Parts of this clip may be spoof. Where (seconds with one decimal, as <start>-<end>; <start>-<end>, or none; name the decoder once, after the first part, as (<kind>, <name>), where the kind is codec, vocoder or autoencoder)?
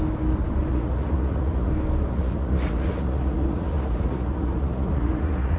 0.7-1.7 (vocoder, Vocos); 2.1-5.6